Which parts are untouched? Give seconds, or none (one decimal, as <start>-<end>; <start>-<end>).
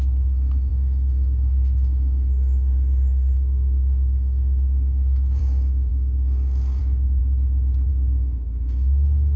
7.2-7.9